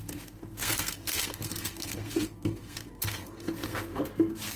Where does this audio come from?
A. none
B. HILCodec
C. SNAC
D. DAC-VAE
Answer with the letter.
C